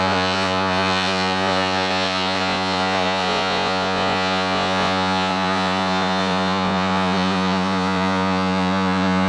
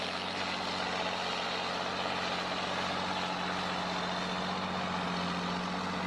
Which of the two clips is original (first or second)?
second